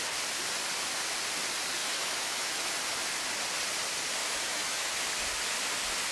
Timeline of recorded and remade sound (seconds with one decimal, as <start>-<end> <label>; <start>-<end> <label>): 0.0-1.8 recorded; 1.8-2.7 remade; 2.7-4.2 recorded; 4.2-5.0 remade; 5.0-6.1 recorded